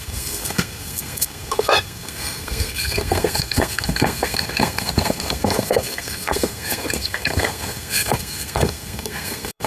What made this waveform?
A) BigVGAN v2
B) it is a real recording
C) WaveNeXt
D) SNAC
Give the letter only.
D